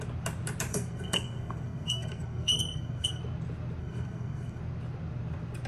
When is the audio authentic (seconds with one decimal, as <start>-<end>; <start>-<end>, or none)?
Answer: 0.0-0.7; 3.2-3.8; 4.6-5.7